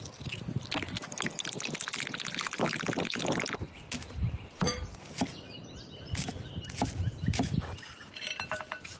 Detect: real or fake real